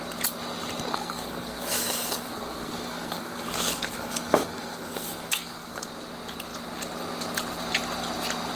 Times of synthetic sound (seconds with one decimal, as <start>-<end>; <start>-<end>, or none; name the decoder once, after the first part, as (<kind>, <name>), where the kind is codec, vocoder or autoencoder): 0.9-5.9 (codec, SNAC)